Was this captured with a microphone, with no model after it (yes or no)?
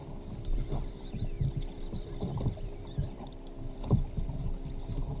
no